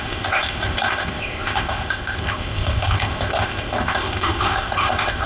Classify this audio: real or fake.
fake